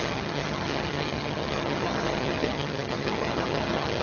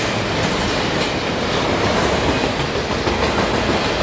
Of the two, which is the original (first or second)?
second